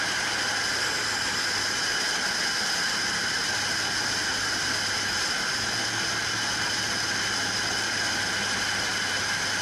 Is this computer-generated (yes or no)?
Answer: no